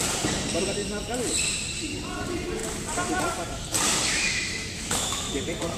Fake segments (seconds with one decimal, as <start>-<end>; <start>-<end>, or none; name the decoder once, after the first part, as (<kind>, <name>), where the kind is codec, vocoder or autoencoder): 4.1-5.3 (autoencoder, DAC-VAE)